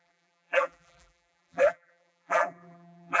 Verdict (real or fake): fake